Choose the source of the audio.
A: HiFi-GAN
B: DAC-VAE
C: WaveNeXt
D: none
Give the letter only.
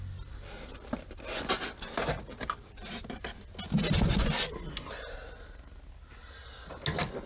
D